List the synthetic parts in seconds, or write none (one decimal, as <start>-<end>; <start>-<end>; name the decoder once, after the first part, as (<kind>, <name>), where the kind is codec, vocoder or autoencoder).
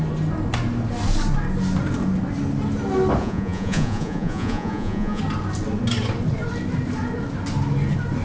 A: 3.2-5.2 (vocoder, Vocos)